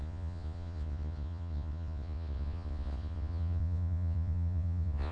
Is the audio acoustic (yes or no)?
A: no